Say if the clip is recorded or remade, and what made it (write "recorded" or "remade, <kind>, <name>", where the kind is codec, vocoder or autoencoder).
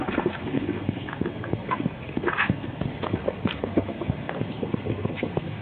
remade, codec, SNAC